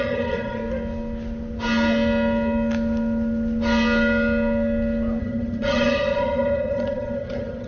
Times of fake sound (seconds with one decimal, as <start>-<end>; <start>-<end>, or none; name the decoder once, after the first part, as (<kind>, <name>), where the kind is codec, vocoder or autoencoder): 0.0-0.6 (vocoder, HiFi-GAN); 5.2-7.7